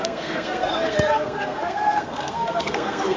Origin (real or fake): fake